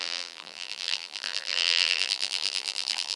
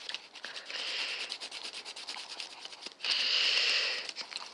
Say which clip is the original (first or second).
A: second